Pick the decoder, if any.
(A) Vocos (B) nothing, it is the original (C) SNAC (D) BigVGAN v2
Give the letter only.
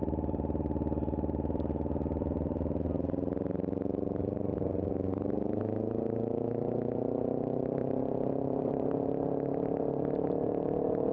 D